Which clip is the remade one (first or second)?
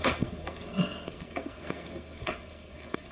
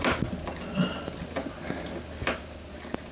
first